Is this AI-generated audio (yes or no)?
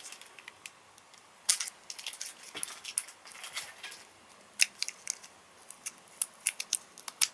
no